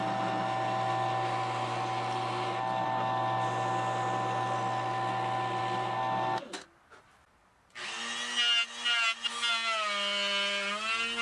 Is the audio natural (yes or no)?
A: yes